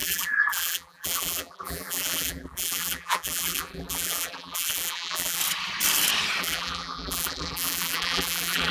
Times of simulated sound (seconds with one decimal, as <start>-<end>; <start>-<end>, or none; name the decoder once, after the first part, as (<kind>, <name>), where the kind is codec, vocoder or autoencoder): 0.0-5.4 (vocoder, BigVGAN v2); 6.4-8.7